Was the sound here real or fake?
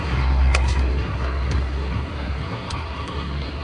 fake